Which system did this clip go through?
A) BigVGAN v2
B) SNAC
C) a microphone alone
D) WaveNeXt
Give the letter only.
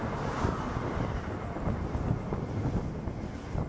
C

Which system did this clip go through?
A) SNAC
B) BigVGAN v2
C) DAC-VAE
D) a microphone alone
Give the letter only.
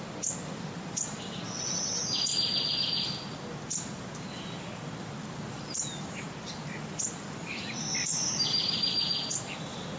B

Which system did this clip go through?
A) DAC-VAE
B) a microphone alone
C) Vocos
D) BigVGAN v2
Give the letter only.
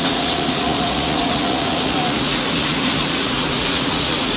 C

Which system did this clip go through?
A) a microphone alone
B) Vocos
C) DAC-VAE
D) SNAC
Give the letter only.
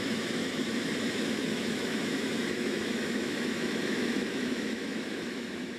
C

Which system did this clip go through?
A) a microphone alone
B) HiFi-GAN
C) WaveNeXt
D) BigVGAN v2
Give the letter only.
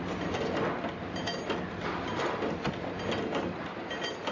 A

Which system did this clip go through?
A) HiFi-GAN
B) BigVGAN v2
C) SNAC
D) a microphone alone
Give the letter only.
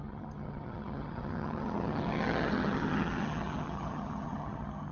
A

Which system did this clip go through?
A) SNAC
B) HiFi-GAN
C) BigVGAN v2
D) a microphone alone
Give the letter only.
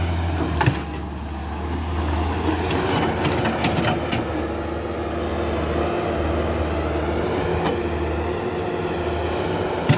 D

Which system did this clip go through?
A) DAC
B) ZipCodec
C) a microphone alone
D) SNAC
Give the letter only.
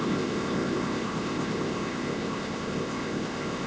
B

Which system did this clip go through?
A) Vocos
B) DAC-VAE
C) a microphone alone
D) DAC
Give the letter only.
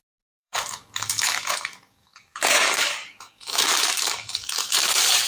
D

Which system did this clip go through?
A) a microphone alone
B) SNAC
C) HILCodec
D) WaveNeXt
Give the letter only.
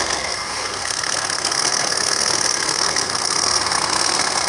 B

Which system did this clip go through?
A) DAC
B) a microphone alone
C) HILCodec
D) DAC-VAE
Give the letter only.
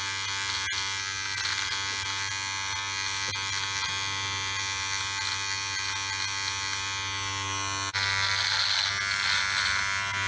B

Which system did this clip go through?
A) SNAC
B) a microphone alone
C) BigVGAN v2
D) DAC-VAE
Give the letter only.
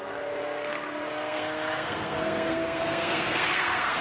A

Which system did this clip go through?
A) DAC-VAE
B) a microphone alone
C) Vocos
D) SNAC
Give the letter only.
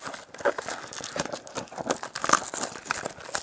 B